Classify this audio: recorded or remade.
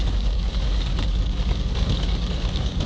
remade